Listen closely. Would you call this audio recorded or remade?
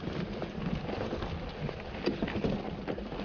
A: recorded